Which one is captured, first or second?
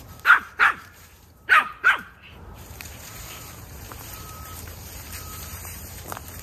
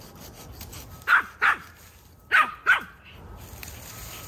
second